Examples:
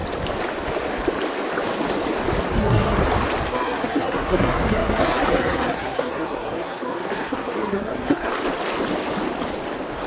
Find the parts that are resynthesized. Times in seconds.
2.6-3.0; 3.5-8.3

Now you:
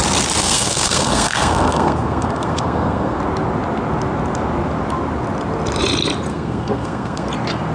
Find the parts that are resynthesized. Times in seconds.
0.4-3.2; 6.3-7.3